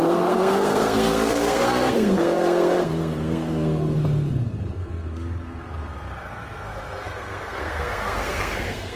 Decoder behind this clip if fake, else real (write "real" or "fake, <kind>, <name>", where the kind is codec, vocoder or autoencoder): fake, codec, SNAC